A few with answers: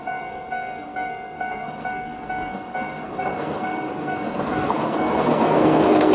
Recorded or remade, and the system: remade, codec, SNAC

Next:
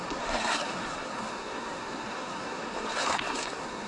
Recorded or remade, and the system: remade, codec, SNAC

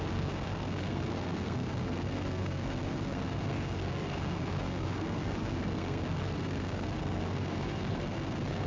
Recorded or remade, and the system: remade, codec, SNAC